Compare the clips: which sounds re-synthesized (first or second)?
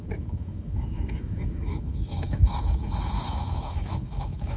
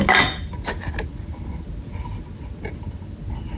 first